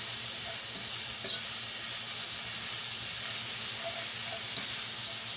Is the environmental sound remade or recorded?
recorded